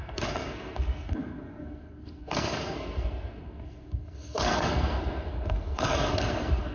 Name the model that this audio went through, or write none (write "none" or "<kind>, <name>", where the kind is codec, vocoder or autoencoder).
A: codec, SNAC